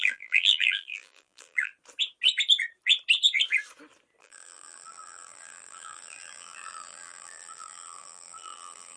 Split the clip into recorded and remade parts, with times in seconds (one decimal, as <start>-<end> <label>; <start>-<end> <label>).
0.0-1.7 remade; 1.7-4.2 recorded; 4.2-9.0 remade